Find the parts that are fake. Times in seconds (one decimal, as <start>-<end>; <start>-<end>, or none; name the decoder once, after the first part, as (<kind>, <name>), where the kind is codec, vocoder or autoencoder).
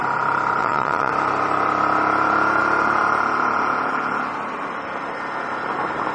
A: 0.6-1.1 (vocoder, Vocos)